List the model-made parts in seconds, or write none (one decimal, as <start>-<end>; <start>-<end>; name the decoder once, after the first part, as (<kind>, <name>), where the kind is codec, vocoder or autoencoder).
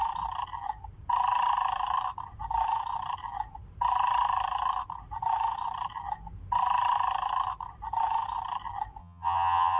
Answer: 9.0-9.8 (vocoder, HiFi-GAN)